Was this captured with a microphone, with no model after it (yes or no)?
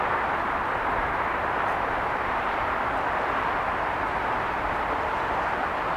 no